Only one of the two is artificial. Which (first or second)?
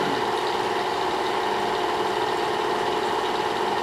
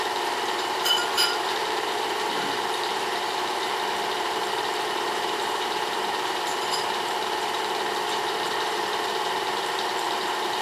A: second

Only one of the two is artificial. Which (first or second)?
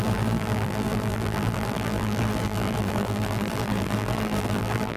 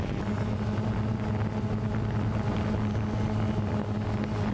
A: first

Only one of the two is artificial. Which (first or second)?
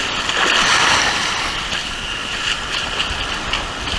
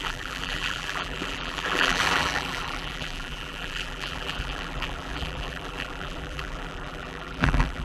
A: second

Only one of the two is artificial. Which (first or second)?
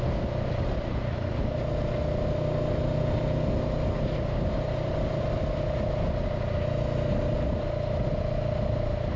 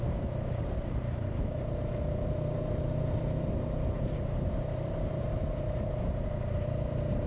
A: second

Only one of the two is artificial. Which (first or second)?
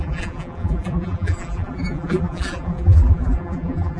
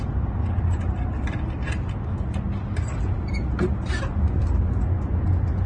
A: first